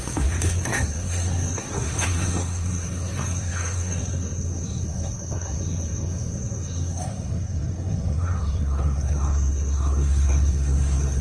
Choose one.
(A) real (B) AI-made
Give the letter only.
B